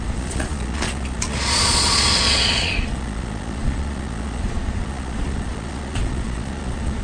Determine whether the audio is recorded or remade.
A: remade